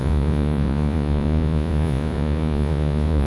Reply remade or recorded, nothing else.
remade